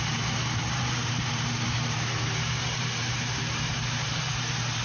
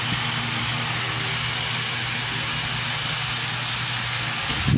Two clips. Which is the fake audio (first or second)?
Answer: first